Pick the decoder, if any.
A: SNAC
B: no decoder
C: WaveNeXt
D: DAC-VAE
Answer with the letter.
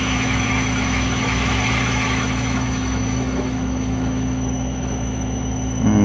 D